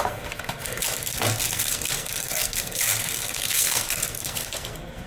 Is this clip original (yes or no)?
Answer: no